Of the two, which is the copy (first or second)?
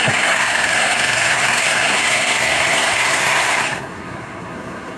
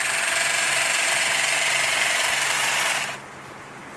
first